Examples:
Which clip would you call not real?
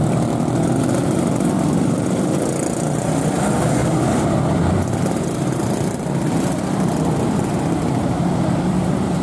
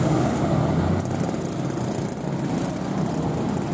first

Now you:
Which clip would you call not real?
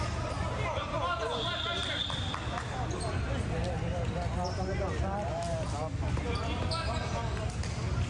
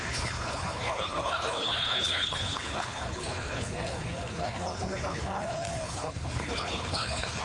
second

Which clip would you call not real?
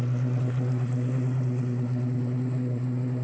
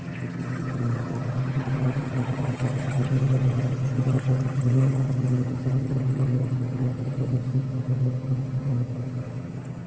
second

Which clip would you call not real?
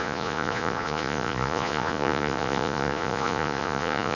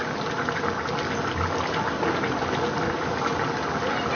first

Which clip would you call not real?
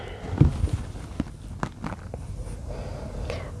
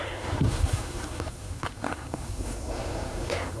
second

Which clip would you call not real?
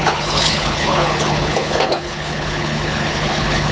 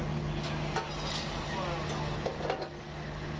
first